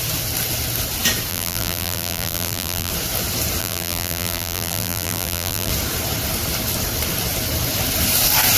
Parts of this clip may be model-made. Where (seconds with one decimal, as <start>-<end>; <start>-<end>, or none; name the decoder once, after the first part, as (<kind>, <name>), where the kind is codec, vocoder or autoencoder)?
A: 1.3-2.9 (vocoder, BigVGAN v2); 3.6-5.7